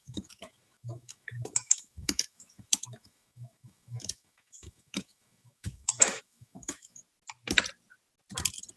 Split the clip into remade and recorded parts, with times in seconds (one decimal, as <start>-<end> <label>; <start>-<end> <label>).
0.0-7.0 remade; 7.0-8.8 recorded